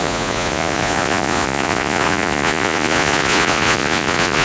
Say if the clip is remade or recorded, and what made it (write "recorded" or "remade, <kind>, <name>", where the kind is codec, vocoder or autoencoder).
remade, vocoder, Vocos